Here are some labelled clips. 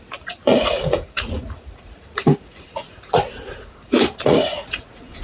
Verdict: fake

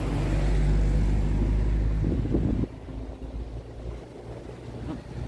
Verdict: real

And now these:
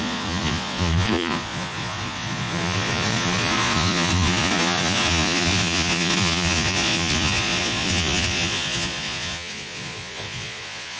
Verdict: fake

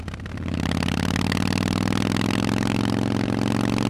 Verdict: real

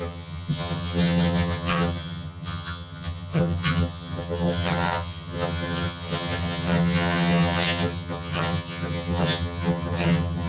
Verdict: fake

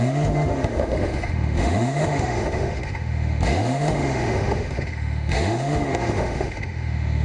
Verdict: fake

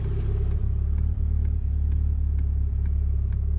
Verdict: real